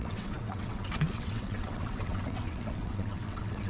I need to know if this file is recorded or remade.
remade